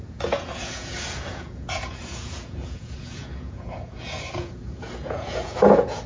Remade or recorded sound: remade